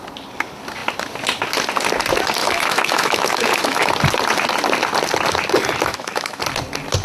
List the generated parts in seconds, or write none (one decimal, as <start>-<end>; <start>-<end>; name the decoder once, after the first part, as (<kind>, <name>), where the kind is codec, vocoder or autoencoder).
2.4-3.9 (autoencoder, DAC-VAE); 5.9-6.4